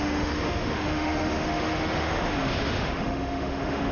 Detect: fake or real fake